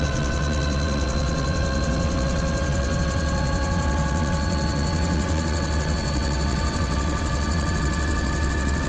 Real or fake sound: fake